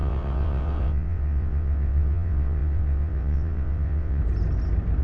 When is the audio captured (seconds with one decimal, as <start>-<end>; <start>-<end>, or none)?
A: 4.2-5.0